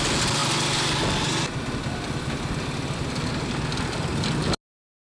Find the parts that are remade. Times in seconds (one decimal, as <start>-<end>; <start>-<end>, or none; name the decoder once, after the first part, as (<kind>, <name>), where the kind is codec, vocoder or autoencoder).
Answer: none

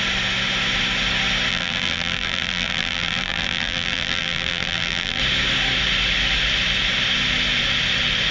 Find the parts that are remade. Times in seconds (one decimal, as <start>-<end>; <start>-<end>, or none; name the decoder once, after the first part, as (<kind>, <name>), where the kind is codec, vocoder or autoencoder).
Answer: 1.5-5.2 (vocoder, BigVGAN v2)

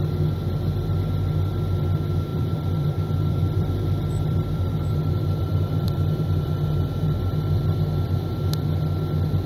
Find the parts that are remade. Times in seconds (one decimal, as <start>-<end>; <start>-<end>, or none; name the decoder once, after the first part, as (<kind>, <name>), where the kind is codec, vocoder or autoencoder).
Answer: 2.3-7.3 (vocoder, BigVGAN v2)